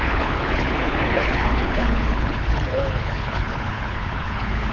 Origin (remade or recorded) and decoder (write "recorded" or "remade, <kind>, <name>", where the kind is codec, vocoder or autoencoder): remade, codec, HILCodec